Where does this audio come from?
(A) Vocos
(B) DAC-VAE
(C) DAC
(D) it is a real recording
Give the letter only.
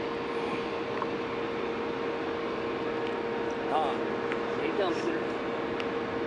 D